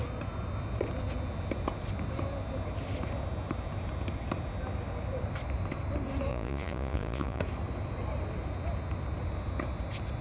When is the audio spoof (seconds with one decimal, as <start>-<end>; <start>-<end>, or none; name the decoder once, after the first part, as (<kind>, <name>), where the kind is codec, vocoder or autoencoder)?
6.3-7.4 (vocoder, Vocos)